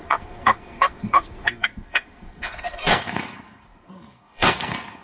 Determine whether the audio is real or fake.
fake